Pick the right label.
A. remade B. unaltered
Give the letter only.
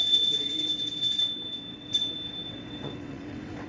A